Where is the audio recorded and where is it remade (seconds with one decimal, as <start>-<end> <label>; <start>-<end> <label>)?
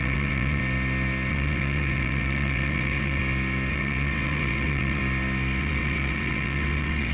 0.0-0.6 remade; 0.6-1.3 recorded; 1.3-3.2 remade; 3.2-3.7 recorded; 3.7-5.0 remade; 5.0-5.6 recorded; 5.6-7.1 remade